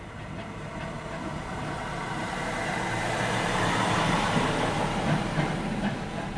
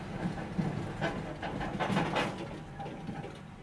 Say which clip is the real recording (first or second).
second